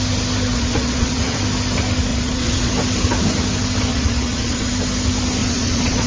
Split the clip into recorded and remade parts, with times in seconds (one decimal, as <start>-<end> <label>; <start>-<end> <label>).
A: 0.0-0.5 recorded; 0.5-1.4 remade; 1.4-2.1 recorded; 2.1-2.7 remade; 2.7-3.9 recorded; 3.9-4.7 remade; 4.7-5.4 recorded; 5.4-6.1 remade